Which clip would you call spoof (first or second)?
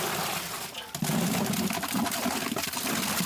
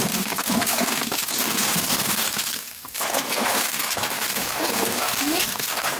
second